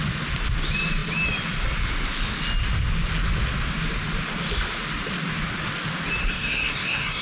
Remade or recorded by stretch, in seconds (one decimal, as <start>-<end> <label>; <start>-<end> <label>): 0.0-6.2 recorded; 6.2-7.2 remade